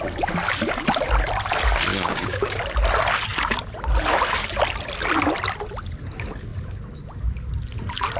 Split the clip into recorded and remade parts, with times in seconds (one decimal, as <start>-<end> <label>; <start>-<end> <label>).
0.0-1.9 recorded; 1.9-2.6 remade; 2.6-8.2 recorded